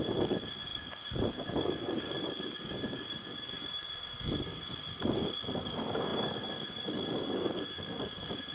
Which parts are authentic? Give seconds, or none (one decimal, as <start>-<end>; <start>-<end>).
none